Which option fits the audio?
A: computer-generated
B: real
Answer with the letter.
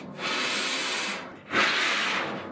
B